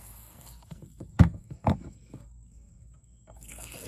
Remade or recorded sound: remade